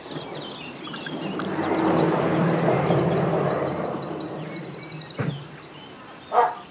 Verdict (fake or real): real